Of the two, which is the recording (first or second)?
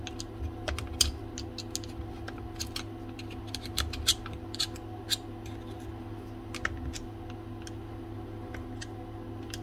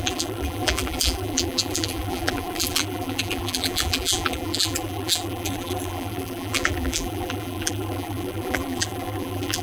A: first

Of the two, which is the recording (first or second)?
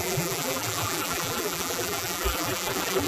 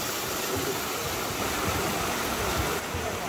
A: second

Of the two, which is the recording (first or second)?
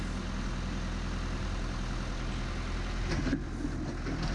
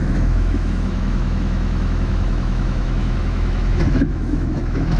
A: first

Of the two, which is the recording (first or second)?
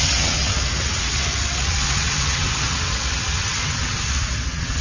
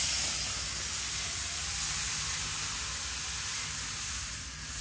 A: second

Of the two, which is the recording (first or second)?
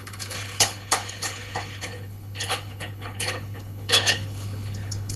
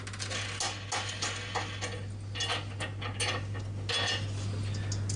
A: second